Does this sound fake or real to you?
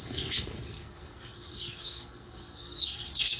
fake